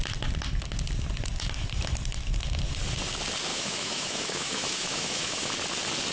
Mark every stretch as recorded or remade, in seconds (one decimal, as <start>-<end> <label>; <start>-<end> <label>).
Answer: 0.0-3.5 recorded; 3.5-5.5 remade; 5.5-6.1 recorded